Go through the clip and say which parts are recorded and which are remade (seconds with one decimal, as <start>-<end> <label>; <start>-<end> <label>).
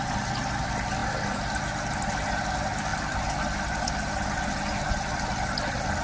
0.0-6.0 recorded